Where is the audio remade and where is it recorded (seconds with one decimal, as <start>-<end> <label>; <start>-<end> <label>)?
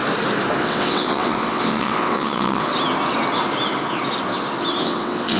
0.0-0.6 recorded; 0.6-2.7 remade; 2.7-4.8 recorded; 4.8-5.4 remade